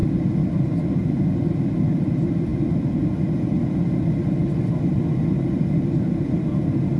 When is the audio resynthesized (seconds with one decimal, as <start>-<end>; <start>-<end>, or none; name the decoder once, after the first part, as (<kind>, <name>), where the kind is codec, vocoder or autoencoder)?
1.7-2.5 (vocoder, BigVGAN v2); 4.7-7.0

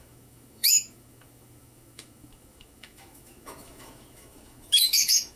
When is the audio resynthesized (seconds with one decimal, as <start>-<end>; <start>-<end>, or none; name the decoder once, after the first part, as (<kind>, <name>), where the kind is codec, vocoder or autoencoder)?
0.0-5.4 (autoencoder, DAC-VAE)